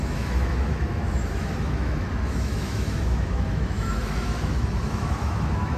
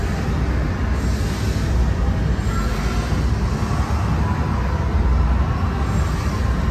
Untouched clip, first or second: second